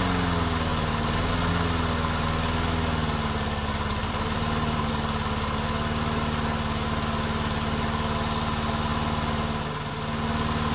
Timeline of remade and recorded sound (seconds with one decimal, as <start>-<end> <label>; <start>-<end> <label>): 0.0-0.7 recorded; 0.7-1.5 remade; 1.5-4.0 recorded; 4.0-4.9 remade; 4.9-10.7 recorded